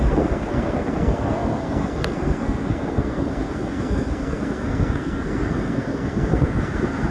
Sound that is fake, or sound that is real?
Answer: fake